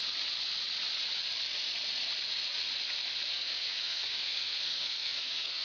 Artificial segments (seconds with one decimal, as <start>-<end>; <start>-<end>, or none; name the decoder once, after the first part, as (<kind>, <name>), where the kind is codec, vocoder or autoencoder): 3.3-5.6 (codec, SNAC)